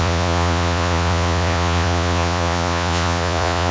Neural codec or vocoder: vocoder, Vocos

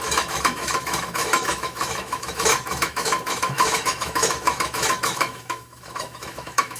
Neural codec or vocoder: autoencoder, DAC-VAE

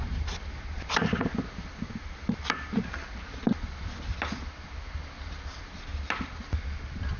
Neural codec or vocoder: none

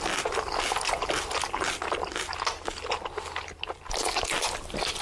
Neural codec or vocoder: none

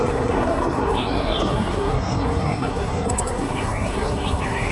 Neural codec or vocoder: codec, SNAC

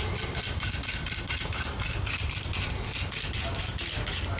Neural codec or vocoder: none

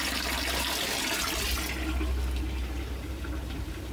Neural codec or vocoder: none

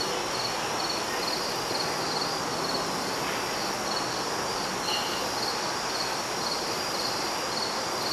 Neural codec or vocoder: none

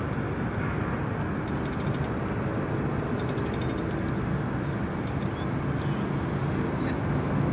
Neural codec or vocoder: none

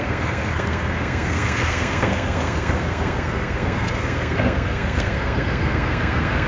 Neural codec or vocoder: codec, SNAC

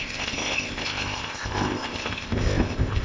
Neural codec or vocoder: codec, ZipCodec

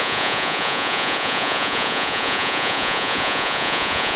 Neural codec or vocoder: vocoder, Vocos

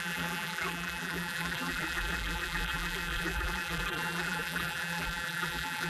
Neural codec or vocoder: vocoder, BigVGAN v2